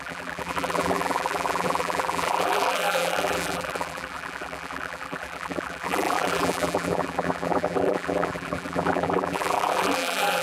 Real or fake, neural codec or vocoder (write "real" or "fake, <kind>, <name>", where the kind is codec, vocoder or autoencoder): fake, vocoder, BigVGAN v2